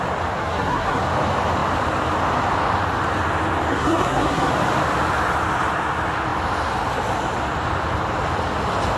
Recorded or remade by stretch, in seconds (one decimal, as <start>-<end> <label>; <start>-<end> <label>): 0.0-0.4 recorded; 0.4-1.0 remade; 1.0-3.7 recorded; 3.7-4.5 remade; 4.5-9.0 recorded